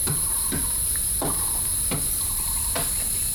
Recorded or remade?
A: recorded